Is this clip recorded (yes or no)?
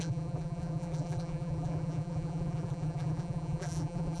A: no